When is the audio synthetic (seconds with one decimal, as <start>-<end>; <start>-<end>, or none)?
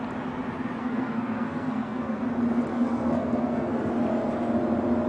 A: 0.8-2.2; 2.7-3.9